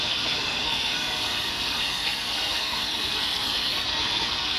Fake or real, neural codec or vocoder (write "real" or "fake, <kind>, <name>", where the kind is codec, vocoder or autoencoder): fake, codec, SNAC